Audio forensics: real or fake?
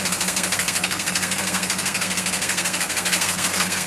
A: fake